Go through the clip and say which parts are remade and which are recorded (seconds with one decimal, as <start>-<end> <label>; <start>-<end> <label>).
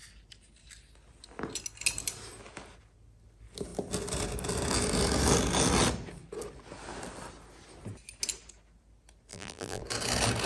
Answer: 0.0-9.3 recorded; 9.3-9.8 remade; 9.8-10.5 recorded